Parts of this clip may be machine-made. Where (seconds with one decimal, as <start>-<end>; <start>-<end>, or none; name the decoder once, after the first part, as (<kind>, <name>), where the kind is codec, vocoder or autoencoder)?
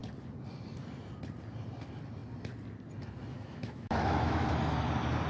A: 3.3-4.5 (autoencoder, DAC-VAE)